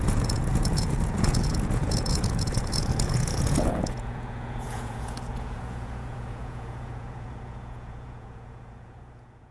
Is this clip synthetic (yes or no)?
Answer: yes